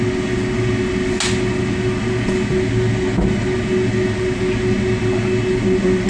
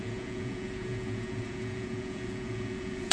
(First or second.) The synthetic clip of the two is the second